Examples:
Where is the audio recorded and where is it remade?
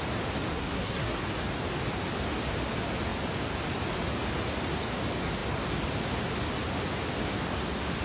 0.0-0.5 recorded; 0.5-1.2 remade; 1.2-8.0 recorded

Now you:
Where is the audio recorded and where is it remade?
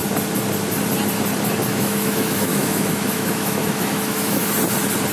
0.0-1.7 recorded; 1.7-4.5 remade; 4.5-5.1 recorded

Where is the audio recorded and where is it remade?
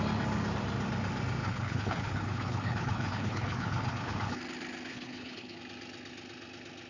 0.0-1.4 recorded; 1.4-4.4 remade; 4.4-4.9 recorded; 4.9-5.6 remade; 5.6-6.9 recorded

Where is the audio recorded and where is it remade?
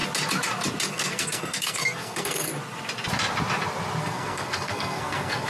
0.0-0.9 recorded; 0.9-2.5 remade; 2.5-4.0 recorded; 4.0-5.5 remade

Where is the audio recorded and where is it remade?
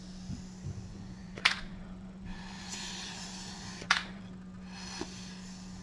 0.0-0.9 recorded; 0.9-4.2 remade; 4.2-5.8 recorded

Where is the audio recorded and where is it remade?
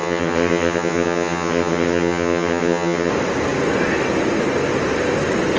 0.0-3.1 remade; 3.1-5.6 recorded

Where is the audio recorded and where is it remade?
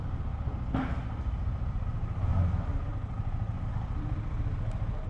0.0-5.1 recorded